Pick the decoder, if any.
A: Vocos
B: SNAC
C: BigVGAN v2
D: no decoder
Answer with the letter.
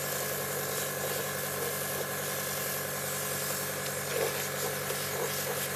D